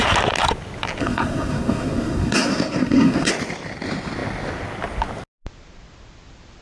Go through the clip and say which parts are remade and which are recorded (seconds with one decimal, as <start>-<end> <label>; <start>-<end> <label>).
0.0-1.0 recorded; 1.0-3.3 remade; 3.3-6.6 recorded